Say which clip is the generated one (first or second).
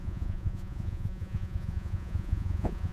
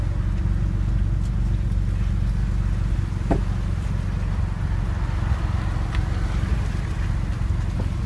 first